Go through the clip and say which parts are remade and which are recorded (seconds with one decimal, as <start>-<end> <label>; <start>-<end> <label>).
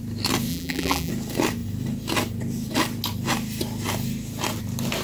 0.0-0.5 recorded; 0.5-1.1 remade; 1.1-5.0 recorded